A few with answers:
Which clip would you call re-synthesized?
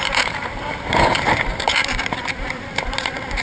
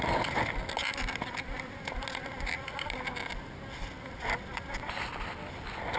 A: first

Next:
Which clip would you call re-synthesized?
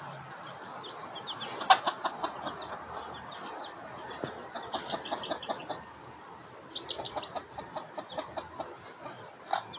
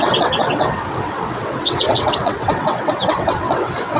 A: second